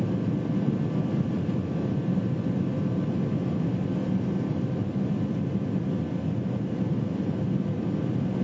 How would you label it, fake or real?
real